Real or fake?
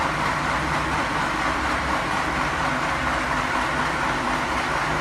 fake